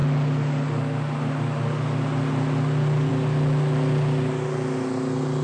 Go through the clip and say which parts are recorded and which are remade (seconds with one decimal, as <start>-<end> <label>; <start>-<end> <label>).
0.0-5.4 recorded